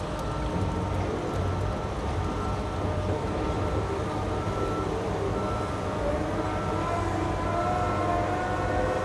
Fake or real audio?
real